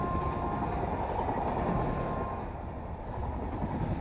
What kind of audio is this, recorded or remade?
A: recorded